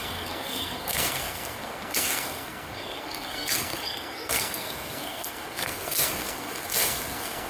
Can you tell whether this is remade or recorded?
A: remade